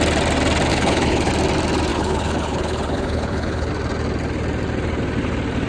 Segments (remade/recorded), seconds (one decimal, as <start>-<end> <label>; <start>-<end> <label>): 0.0-0.7 recorded; 0.7-1.3 remade; 1.3-1.9 recorded; 1.9-3.7 remade; 3.7-5.7 recorded